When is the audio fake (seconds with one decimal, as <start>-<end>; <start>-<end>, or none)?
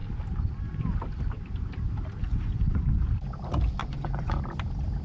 2.2-3.1; 3.8-4.4